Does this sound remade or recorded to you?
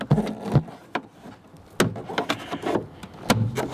recorded